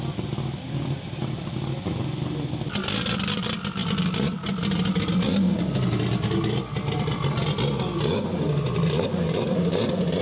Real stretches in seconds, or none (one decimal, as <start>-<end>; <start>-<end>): 0.0-10.2